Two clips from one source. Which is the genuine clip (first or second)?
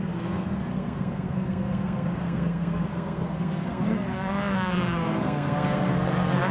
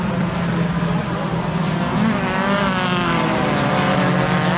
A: second